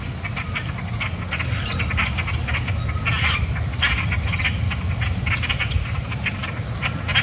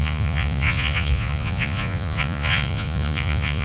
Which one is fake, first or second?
second